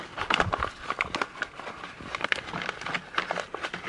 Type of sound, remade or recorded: recorded